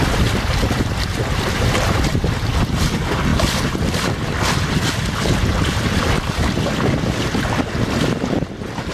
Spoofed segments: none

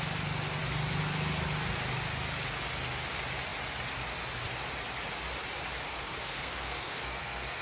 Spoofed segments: 5.9-7.6 (codec, SNAC)

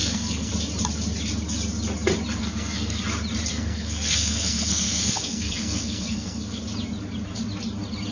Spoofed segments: 0.0-0.5 (codec, SNAC); 2.4-3.0; 3.5-6.6

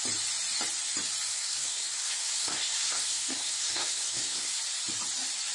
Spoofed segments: 1.3-4.6 (codec, SNAC)

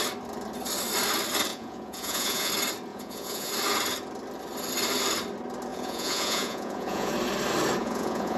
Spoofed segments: 1.5-2.5 (vocoder, Vocos); 2.9-3.5; 5.7-7.1; 7.8-8.4

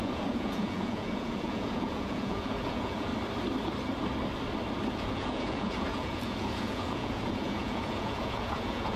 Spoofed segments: 0.0-3.1 (vocoder, Vocos); 4.9-9.0

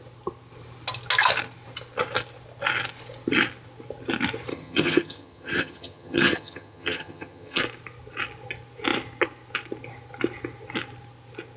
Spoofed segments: 4.5-7.6 (vocoder, HiFi-GAN)